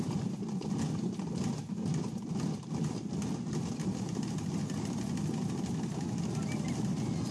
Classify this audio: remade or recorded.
recorded